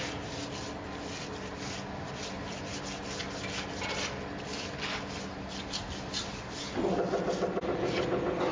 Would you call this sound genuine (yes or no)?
yes